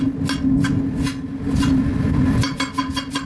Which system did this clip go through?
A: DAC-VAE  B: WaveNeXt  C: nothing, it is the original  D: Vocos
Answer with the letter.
C